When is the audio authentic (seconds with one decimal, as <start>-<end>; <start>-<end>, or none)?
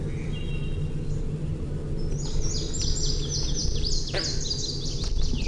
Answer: 0.0-5.5